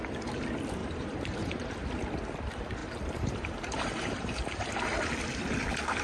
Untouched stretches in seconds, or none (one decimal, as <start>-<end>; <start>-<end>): 0.0-0.8; 1.7-2.8; 4.7-6.0